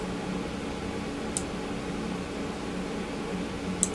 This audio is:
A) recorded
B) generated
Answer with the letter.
A